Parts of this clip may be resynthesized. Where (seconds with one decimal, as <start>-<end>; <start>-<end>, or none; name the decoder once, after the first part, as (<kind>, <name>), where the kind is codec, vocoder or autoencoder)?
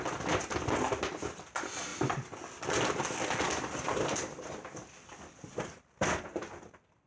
1.9-6.2 (vocoder, BigVGAN v2)